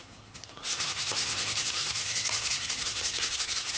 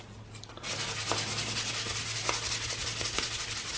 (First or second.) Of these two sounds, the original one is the second